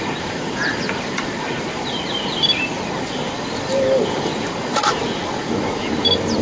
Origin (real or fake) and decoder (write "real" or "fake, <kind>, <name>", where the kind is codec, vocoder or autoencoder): real